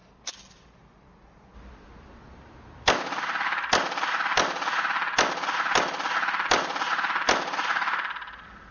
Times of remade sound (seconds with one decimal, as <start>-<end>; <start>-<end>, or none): none

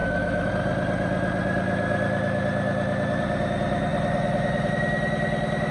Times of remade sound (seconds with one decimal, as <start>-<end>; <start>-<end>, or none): 0.0-0.5

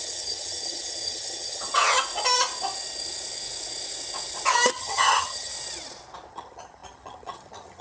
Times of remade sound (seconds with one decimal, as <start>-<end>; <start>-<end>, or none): 0.0-1.7; 4.8-5.5; 6.3-7.8

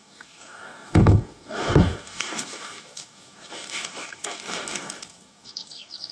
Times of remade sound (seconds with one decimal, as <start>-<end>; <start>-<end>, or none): 0.0-6.1